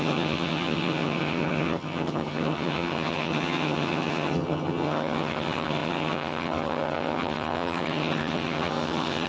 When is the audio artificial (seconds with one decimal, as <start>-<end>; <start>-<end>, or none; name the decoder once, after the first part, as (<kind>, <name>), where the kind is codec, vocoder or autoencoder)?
0.0-9.3 (vocoder, HiFi-GAN)